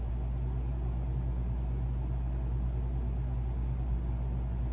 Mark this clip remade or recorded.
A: recorded